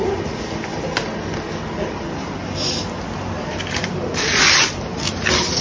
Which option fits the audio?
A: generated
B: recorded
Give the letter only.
B